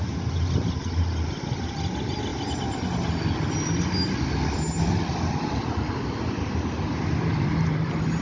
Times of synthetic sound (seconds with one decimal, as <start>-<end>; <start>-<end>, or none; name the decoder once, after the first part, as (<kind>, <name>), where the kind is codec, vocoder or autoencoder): none